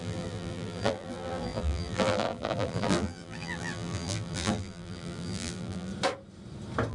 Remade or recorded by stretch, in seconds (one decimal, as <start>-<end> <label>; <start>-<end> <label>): 0.0-5.9 remade; 5.9-6.9 recorded